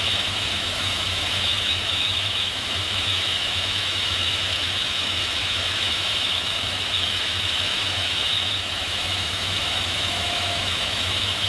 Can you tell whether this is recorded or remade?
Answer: remade